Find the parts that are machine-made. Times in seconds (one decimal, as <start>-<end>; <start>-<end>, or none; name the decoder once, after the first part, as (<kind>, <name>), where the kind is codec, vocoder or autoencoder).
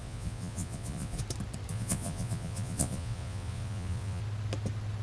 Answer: 0.0-1.2 (vocoder, Vocos); 1.7-4.2